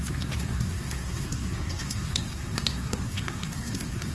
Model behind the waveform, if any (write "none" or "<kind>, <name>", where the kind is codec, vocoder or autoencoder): codec, SNAC